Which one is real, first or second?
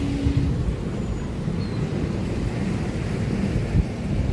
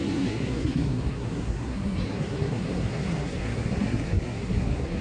first